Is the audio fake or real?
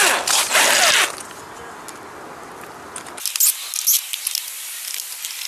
real